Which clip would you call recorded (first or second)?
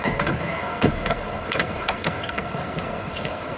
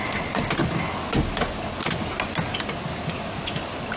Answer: second